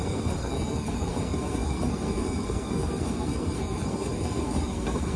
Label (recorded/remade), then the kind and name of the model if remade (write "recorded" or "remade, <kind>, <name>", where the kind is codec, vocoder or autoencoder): remade, codec, SNAC